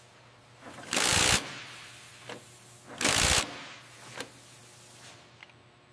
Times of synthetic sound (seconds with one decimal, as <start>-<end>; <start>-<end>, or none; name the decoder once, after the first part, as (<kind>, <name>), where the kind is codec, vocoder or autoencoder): none